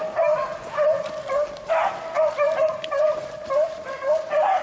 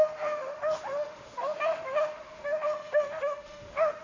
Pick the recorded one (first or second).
first